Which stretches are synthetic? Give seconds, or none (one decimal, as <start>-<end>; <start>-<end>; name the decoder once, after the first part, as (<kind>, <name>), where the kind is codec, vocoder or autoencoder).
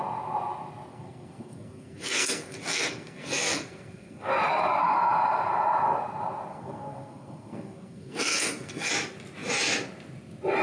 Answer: 0.9-4.3 (codec, SNAC); 6.5-8.9